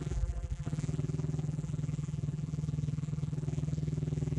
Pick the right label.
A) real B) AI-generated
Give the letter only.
B